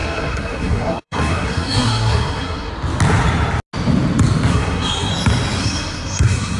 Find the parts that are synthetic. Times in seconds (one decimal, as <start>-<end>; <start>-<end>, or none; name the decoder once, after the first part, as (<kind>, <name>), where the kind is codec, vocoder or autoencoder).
0.0-2.7 (codec, SNAC); 4.5-5.1; 5.6-6.6